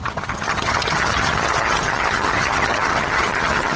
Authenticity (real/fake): fake